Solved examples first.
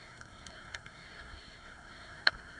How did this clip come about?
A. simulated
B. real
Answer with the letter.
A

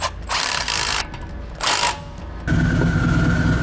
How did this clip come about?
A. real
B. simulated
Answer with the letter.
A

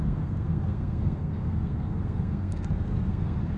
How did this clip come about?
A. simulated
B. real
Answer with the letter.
A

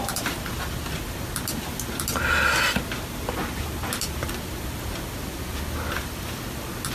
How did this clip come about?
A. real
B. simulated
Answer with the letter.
A